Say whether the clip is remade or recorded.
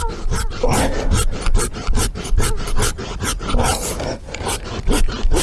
recorded